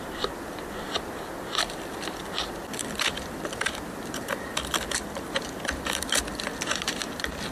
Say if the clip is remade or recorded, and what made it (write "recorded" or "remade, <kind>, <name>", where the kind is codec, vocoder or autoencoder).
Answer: remade, vocoder, BigVGAN v2